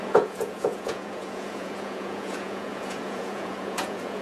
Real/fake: fake